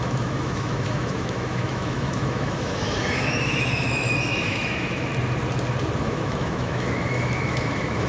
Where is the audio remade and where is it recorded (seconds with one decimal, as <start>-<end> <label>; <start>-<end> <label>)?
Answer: 0.0-5.1 remade; 5.1-6.0 recorded; 6.0-8.1 remade